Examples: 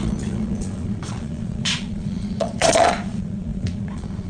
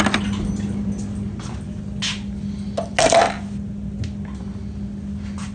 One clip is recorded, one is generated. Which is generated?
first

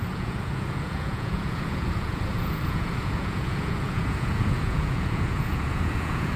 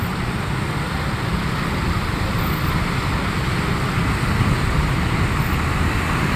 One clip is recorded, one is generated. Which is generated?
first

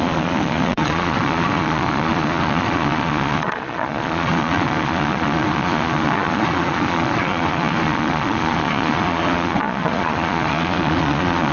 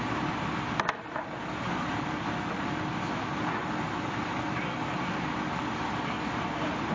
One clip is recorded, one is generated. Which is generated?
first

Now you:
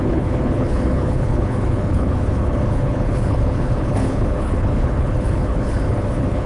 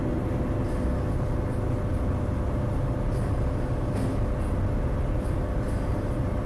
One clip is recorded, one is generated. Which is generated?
first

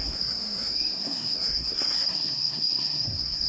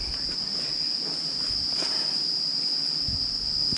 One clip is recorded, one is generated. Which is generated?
first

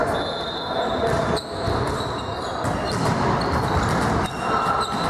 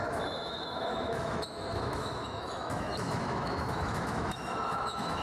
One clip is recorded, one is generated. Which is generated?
second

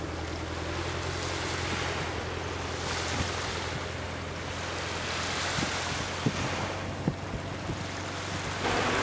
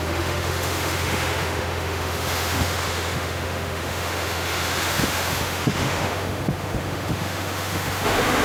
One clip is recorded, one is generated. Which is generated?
second